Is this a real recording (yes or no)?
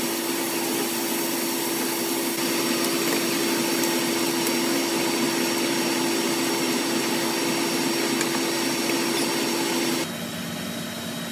yes